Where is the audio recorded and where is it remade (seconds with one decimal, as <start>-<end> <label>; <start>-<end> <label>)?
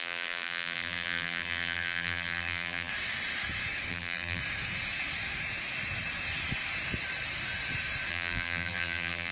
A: 0.0-2.9 remade; 2.9-3.9 recorded; 3.9-4.4 remade; 4.4-8.1 recorded; 8.1-9.3 remade